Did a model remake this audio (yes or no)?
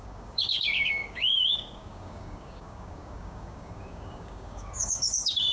yes